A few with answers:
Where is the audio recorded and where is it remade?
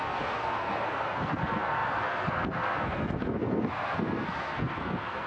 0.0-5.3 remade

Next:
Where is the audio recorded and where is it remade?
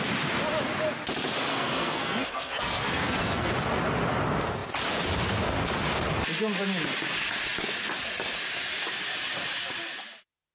0.0-1.5 recorded; 1.5-3.5 remade; 3.5-10.5 recorded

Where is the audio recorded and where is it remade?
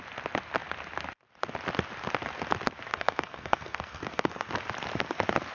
0.0-2.9 recorded; 2.9-4.5 remade; 4.5-5.5 recorded